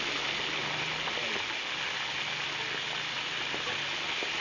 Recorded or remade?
recorded